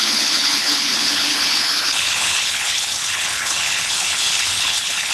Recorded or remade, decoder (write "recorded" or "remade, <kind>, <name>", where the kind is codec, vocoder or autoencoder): remade, codec, HILCodec